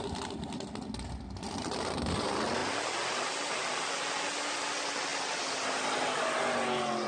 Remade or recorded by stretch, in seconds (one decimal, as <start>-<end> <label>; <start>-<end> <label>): 0.0-7.1 recorded